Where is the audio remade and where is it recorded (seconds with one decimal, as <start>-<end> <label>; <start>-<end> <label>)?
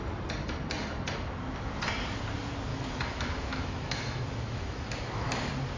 0.0-2.7 recorded; 2.7-5.3 remade; 5.3-5.8 recorded